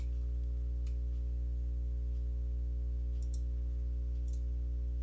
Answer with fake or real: real